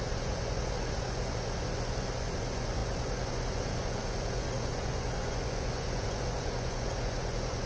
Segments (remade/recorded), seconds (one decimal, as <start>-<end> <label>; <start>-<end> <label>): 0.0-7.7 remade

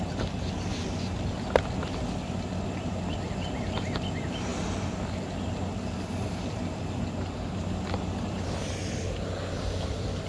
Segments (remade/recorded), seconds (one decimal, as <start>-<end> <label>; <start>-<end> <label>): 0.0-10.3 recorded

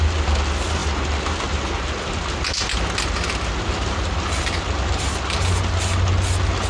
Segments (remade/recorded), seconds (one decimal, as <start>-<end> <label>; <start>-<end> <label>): 0.0-6.7 recorded

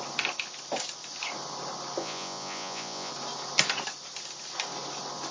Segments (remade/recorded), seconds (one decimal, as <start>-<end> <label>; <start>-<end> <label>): 0.0-2.0 recorded; 2.0-3.1 remade; 3.1-5.3 recorded